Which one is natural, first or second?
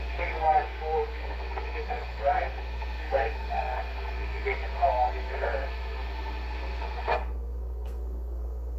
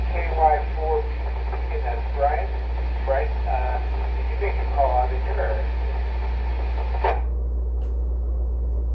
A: second